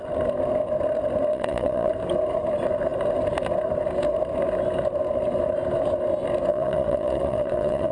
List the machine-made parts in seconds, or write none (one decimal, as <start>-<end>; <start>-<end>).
1.3-1.9; 6.5-7.9